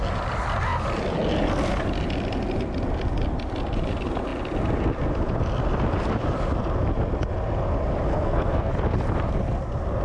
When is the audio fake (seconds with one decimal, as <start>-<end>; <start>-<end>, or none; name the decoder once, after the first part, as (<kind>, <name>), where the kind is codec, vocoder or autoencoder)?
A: 8.1-8.7 (codec, SNAC)